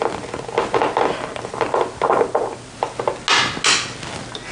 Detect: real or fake real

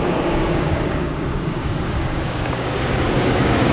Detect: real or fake fake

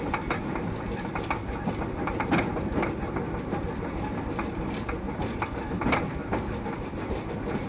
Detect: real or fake real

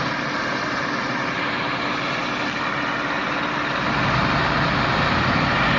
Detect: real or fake real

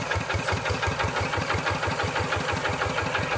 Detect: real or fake real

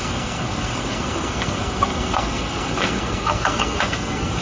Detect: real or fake fake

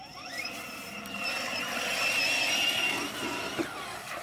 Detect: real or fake real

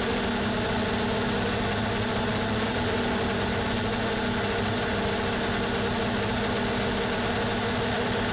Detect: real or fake real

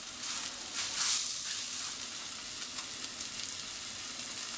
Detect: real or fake real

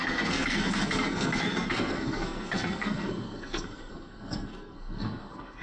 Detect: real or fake fake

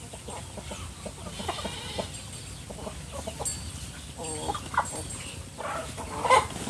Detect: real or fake real